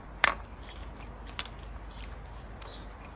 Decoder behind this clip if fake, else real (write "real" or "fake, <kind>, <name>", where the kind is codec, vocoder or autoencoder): real